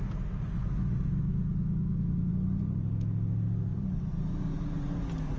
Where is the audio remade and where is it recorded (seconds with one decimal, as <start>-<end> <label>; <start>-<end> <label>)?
0.0-0.6 recorded; 0.6-2.3 remade; 2.3-5.4 recorded